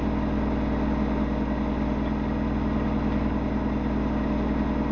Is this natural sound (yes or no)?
yes